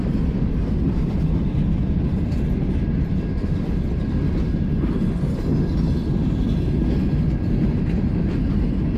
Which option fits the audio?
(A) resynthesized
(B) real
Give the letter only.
B